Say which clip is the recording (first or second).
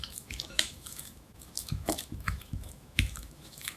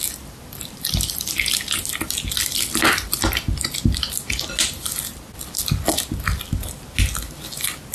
second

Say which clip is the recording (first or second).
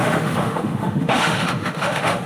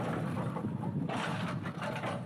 second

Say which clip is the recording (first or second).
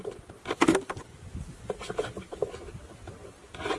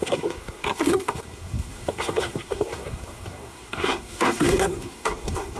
first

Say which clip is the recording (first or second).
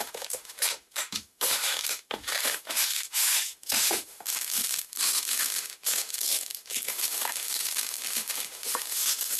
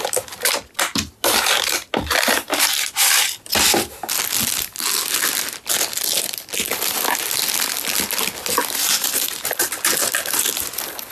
second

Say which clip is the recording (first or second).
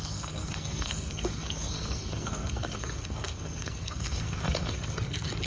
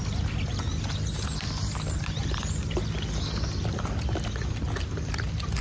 second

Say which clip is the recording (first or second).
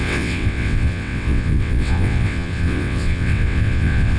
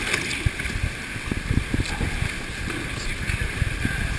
second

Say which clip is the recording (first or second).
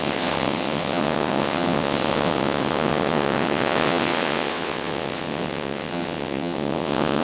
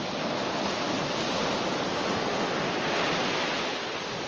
second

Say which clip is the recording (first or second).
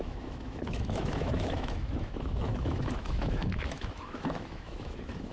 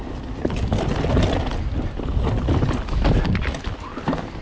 second